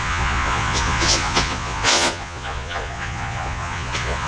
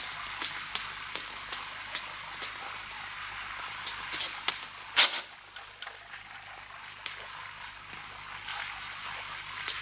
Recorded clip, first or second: second